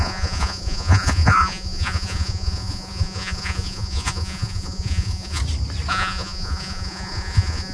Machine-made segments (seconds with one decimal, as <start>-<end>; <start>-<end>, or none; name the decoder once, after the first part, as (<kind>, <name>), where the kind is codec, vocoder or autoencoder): 0.0-5.4 (vocoder, Vocos); 5.9-7.7